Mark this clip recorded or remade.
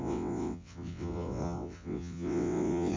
remade